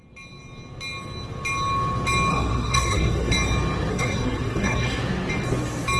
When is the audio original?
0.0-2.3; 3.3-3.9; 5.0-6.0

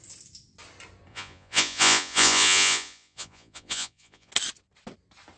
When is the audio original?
0.0-1.1; 4.3-5.4

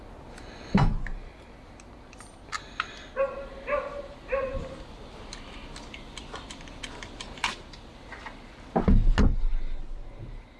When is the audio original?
0.0-10.6

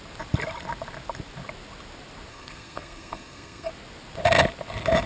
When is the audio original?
0.0-2.3; 3.7-5.1

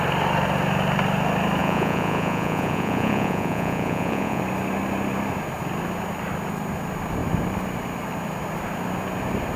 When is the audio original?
0.0-1.6; 4.4-9.6

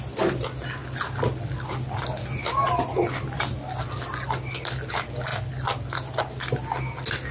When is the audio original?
0.0-7.3

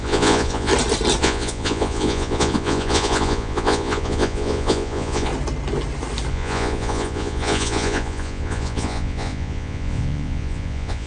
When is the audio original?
0.7-1.2; 5.3-6.3

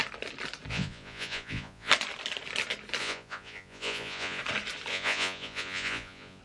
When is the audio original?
0.0-0.7; 1.9-3.0; 4.4-4.9